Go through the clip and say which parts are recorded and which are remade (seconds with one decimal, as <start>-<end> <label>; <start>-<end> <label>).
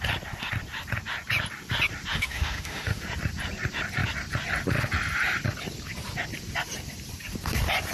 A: 0.0-2.1 recorded; 2.1-3.0 remade; 3.0-7.9 recorded